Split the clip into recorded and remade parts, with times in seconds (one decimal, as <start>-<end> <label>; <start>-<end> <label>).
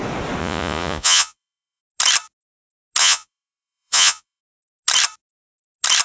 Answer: 0.0-0.4 recorded; 0.4-1.8 remade; 1.8-3.0 recorded; 3.0-4.4 remade; 4.4-6.0 recorded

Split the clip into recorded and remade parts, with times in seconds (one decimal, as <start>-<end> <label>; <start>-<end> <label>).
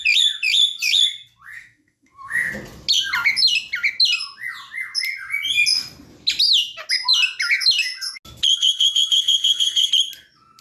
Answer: 0.0-1.6 recorded; 1.6-2.5 remade; 2.5-8.5 recorded; 8.5-9.9 remade; 9.9-10.6 recorded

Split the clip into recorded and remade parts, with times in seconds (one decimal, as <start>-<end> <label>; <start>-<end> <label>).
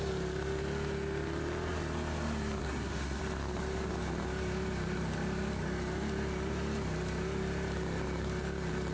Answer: 0.0-2.6 recorded; 2.6-3.2 remade; 3.2-8.9 recorded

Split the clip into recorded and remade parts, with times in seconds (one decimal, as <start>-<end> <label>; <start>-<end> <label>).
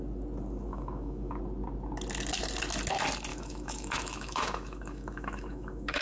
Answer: 0.0-0.7 recorded; 0.7-1.4 remade; 1.4-3.3 recorded; 3.3-6.0 remade